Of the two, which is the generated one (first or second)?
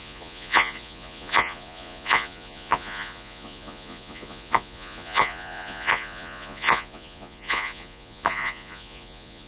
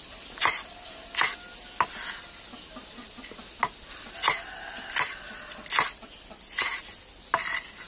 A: first